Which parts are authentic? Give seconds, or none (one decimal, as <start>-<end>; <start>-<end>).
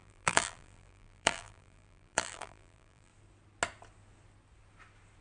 3.1-5.2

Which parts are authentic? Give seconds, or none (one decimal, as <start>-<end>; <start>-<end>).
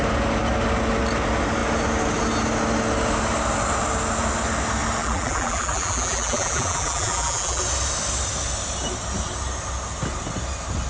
0.0-5.0; 7.6-10.9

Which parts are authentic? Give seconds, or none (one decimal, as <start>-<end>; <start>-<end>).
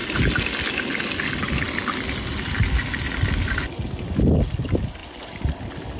0.0-5.0; 5.6-6.0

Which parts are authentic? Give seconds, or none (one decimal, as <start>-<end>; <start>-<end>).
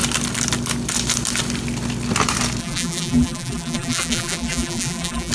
0.0-2.6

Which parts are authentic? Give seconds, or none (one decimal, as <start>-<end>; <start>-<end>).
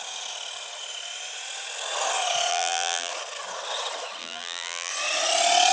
0.0-2.5; 3.1-4.2; 4.9-5.7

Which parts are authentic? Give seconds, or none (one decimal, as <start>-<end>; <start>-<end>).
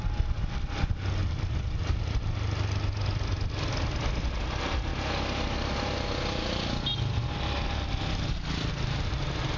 0.0-9.6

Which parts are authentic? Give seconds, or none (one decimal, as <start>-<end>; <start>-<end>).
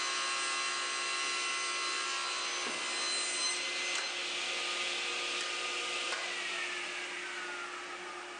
0.0-8.4